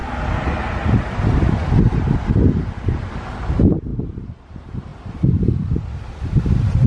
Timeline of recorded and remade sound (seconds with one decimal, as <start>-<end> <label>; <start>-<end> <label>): 0.0-6.9 recorded